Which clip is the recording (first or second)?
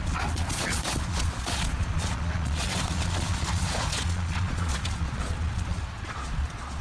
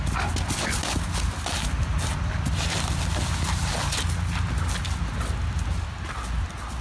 second